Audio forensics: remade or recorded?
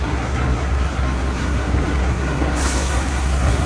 remade